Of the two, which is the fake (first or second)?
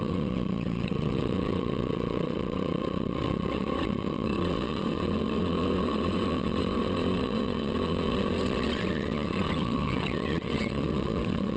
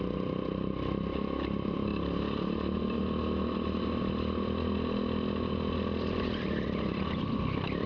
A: first